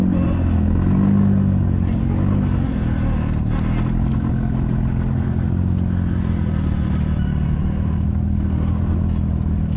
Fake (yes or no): no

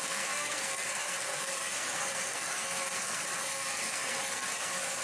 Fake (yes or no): yes